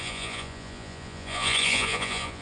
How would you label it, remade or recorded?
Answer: remade